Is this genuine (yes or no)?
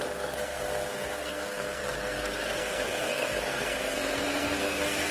no